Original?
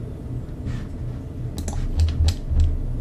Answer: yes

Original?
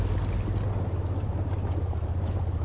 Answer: yes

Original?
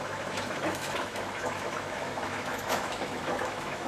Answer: no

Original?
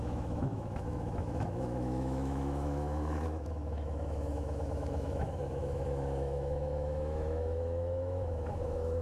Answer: no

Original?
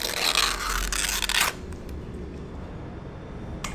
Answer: yes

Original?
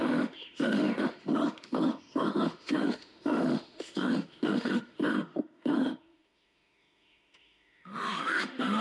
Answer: no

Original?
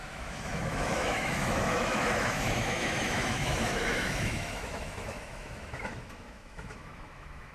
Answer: no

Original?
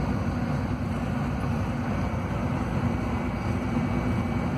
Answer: yes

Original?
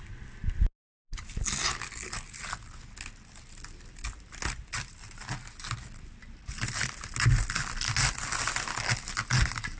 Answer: yes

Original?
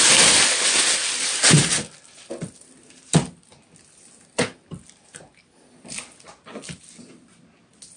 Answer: yes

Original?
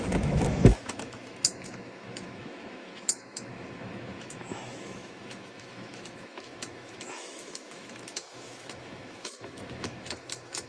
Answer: no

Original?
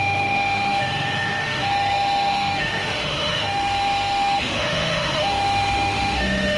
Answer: no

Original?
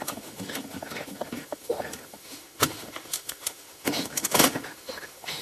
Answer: no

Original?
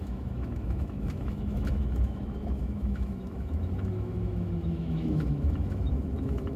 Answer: no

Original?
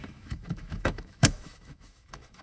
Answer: no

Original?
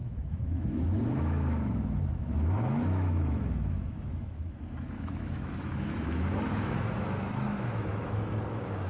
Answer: no